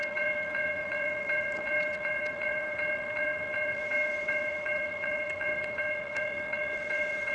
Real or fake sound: fake